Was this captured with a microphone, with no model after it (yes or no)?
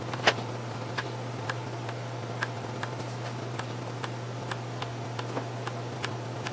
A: yes